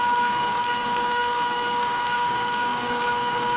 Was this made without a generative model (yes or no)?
no